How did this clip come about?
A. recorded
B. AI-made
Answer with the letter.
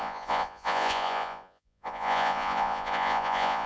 B